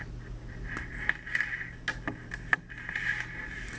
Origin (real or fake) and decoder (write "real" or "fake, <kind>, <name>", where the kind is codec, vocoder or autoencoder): real